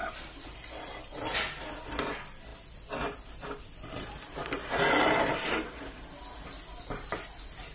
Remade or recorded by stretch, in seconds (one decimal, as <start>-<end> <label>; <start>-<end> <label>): 0.0-7.7 recorded